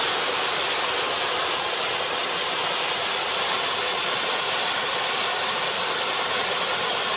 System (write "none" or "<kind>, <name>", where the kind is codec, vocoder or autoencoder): none